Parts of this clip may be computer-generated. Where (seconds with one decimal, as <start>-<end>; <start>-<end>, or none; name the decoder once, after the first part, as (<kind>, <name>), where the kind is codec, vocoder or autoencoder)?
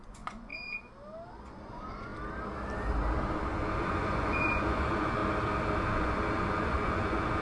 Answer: 0.0-0.5 (vocoder, Vocos); 1.3-2.1; 3.5-5.2; 5.9-7.4